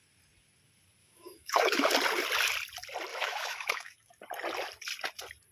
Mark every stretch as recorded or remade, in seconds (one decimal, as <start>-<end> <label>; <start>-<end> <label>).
0.0-1.0 recorded; 1.0-1.9 remade; 1.9-3.1 recorded; 3.1-4.1 remade; 4.1-5.5 recorded

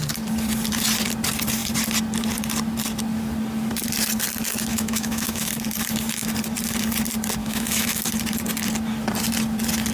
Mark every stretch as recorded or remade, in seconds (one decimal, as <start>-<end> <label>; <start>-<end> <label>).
0.0-4.7 recorded; 4.7-5.5 remade; 5.5-7.4 recorded; 7.4-8.1 remade; 8.1-9.9 recorded

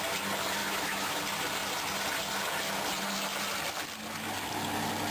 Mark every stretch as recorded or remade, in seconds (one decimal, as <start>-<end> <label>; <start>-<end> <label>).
0.0-0.6 recorded; 0.6-1.2 remade; 1.2-5.1 recorded

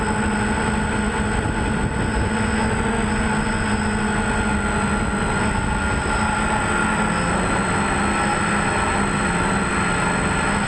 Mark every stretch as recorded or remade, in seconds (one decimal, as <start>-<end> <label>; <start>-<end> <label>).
0.0-10.7 recorded

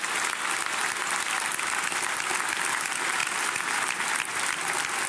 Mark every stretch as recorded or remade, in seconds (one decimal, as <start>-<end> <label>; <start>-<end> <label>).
0.0-5.1 recorded